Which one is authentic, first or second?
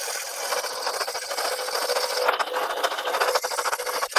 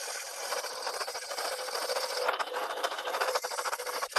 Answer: first